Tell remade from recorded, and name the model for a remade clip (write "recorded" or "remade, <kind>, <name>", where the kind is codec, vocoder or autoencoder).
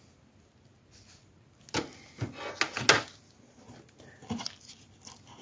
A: recorded